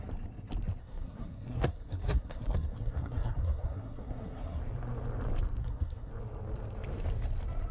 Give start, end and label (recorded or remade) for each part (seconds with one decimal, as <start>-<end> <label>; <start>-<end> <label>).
0.0-0.8 recorded; 0.8-4.6 remade; 4.6-5.6 recorded; 5.6-6.1 remade; 6.1-7.7 recorded